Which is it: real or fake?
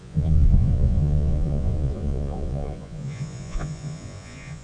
fake